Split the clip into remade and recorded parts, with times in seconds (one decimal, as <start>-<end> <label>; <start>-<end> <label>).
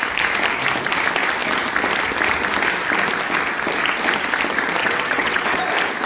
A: 0.0-4.8 recorded; 4.8-5.6 remade; 5.6-6.1 recorded